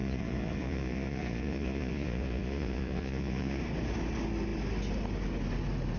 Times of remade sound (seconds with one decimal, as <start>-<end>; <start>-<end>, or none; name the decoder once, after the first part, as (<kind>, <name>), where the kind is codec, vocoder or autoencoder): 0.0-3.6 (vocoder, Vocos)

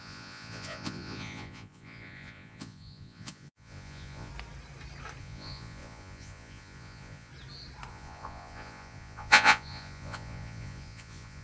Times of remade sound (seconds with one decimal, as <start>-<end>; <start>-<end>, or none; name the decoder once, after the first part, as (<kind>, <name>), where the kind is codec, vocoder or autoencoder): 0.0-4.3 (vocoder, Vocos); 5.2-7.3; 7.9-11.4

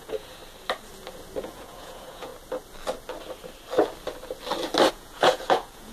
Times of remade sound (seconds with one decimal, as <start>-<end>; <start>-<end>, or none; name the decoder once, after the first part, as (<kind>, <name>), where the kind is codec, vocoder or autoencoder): 0.0-0.4 (vocoder, Vocos); 1.4-2.3; 4.9-5.9

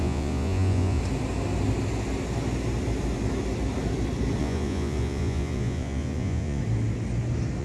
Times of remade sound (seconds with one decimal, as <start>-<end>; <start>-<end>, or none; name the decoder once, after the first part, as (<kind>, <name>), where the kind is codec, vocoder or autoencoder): 0.0-1.0 (vocoder, Vocos); 4.4-6.6